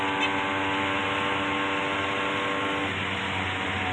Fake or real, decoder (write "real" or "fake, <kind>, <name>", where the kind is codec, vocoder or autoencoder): real